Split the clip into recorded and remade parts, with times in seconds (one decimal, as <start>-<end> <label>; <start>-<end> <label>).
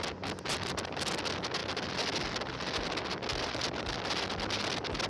0.0-5.1 recorded